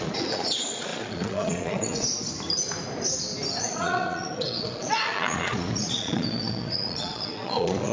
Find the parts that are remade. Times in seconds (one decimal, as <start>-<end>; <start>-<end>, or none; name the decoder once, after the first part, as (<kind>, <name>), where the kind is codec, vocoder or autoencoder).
0.0-2.1 (vocoder, Vocos); 3.6-7.9